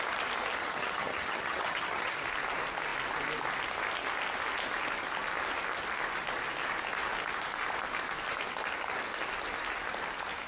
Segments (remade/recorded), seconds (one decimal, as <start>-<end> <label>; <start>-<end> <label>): 0.0-0.6 recorded; 0.6-2.2 remade; 2.2-10.5 recorded